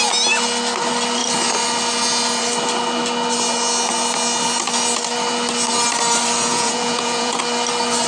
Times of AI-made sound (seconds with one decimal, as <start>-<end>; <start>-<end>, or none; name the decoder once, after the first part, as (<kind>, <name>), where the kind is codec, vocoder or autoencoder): 6.5-7.4 (vocoder, Vocos)